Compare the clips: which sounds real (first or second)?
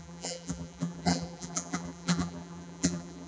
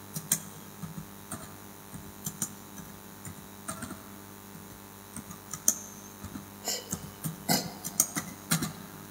second